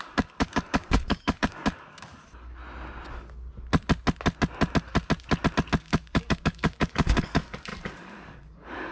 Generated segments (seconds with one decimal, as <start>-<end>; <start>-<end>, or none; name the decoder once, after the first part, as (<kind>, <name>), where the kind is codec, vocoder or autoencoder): 0.0-2.6 (codec, DAC); 5.8-8.9